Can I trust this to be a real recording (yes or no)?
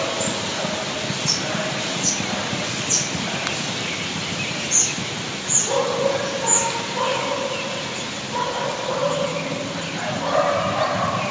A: yes